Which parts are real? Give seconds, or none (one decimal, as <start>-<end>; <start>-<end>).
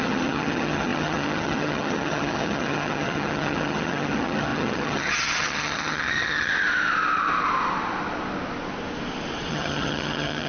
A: 6.5-9.5